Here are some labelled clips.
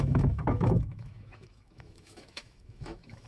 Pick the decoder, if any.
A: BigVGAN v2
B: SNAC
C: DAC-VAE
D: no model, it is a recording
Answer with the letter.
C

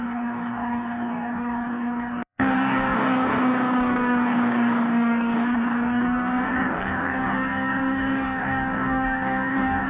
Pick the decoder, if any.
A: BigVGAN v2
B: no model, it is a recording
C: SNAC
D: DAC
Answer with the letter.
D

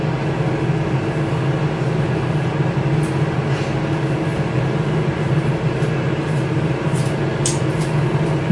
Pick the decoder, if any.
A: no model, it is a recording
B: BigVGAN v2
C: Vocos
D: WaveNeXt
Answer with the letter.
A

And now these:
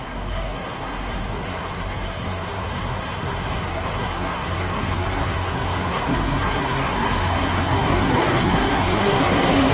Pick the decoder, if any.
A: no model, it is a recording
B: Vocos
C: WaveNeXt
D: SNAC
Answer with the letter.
D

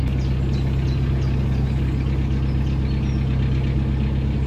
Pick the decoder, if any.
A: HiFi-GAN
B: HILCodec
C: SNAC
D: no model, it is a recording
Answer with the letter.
D